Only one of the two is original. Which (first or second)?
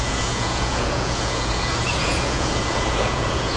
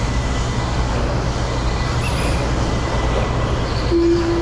second